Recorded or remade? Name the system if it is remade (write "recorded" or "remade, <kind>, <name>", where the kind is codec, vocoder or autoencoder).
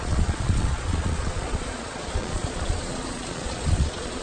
remade, vocoder, Vocos